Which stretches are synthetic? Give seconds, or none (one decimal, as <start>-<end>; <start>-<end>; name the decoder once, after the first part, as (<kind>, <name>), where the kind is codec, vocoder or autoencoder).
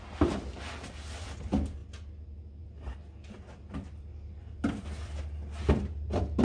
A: none